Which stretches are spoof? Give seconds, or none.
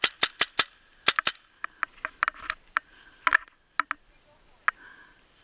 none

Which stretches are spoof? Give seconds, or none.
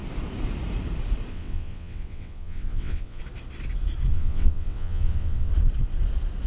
1.3-3.2 (vocoder, WaveNeXt); 4.1-5.5